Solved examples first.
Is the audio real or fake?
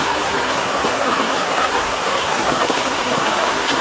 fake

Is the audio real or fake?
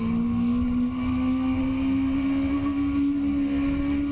real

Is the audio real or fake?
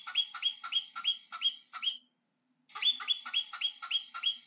real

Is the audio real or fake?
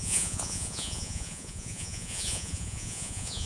fake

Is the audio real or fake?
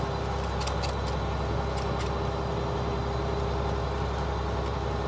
real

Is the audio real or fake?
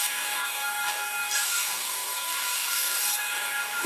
fake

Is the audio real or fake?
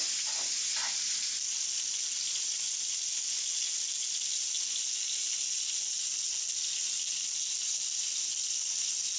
real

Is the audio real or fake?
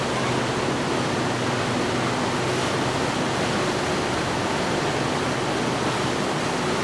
real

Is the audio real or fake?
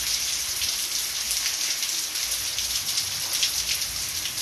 real